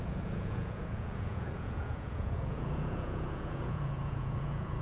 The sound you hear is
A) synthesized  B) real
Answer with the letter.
A